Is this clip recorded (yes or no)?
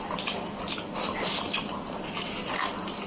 yes